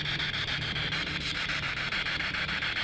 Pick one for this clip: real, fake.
fake